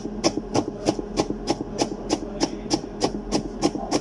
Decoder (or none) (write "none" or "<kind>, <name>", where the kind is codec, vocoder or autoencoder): none